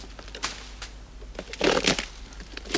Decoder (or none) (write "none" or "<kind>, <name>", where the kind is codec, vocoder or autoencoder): none